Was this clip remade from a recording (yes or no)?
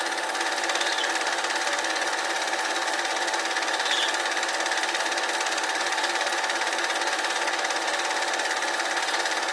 no